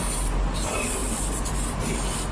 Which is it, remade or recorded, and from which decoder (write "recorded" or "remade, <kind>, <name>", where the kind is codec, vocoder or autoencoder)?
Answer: remade, vocoder, BigVGAN v2